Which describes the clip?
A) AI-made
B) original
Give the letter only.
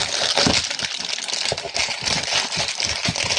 B